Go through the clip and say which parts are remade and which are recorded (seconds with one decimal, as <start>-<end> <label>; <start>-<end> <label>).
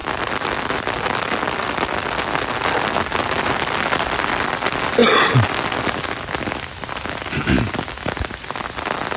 0.0-9.2 recorded